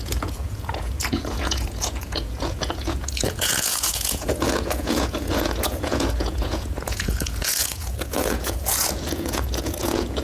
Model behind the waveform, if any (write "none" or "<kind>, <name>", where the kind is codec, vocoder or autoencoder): vocoder, Vocos